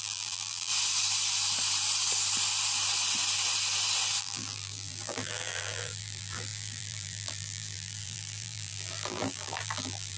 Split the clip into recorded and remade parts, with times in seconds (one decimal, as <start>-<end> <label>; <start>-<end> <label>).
0.0-0.7 remade; 0.7-4.2 recorded; 4.2-10.2 remade